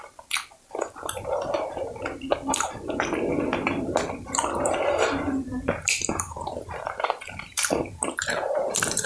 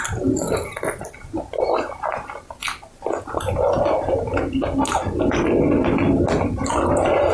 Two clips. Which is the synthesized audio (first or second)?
first